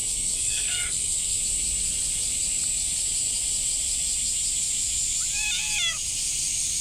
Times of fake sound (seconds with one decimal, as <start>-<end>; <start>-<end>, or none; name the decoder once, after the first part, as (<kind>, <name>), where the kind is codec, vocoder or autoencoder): 0.0-1.4 (codec, SNAC)